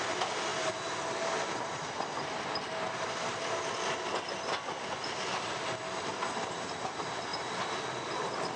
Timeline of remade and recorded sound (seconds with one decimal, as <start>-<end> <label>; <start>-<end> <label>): 0.0-0.5 recorded; 0.5-1.2 remade; 1.2-8.6 recorded